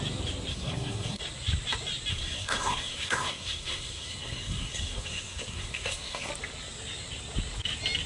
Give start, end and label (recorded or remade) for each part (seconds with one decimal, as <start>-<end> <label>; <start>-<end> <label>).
0.0-0.5 recorded; 0.5-1.2 remade; 1.2-2.1 recorded; 2.1-6.3 remade; 6.3-8.1 recorded